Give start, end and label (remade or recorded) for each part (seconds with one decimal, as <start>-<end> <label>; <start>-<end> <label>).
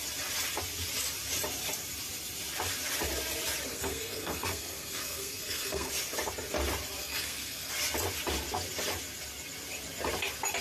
0.0-3.7 recorded; 3.7-5.9 remade; 5.9-7.0 recorded; 7.0-7.7 remade; 7.7-10.6 recorded